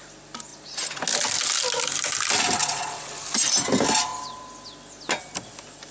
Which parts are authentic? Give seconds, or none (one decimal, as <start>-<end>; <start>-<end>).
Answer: 0.0-2.6; 3.1-5.9